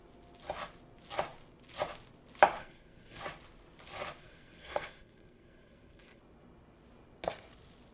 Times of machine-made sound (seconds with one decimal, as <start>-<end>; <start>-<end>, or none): 2.6-3.2; 4.2-6.2